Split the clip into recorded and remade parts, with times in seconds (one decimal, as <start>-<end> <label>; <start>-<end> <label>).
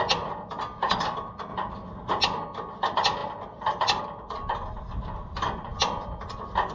0.0-6.7 recorded